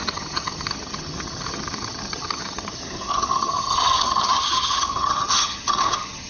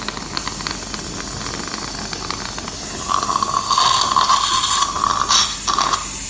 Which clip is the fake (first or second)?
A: first